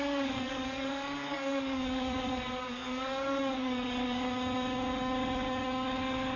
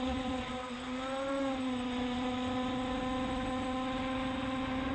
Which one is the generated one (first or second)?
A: first